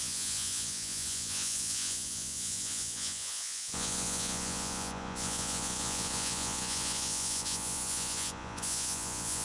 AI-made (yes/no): yes